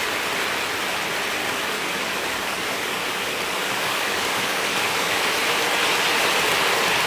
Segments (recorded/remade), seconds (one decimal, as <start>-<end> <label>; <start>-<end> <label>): 0.0-1.4 recorded; 1.4-5.2 remade; 5.2-7.1 recorded